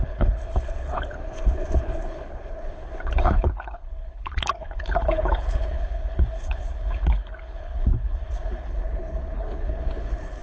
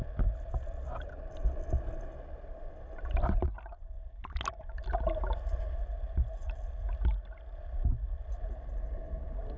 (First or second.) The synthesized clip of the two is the first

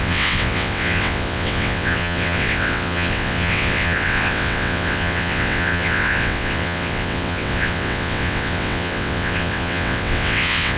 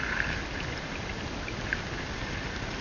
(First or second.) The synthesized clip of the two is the first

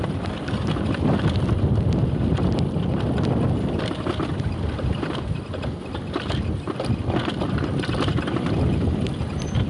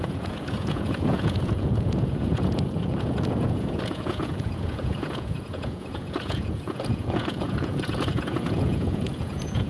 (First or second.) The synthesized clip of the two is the second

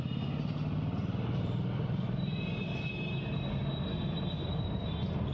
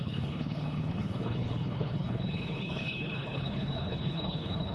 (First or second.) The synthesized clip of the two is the second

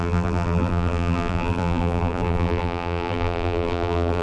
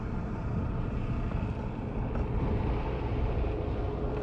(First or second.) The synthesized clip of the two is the first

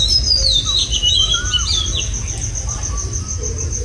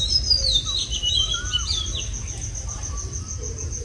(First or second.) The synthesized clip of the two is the second